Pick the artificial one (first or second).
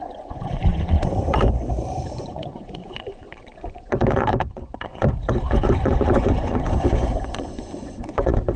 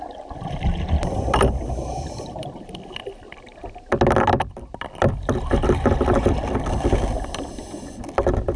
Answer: first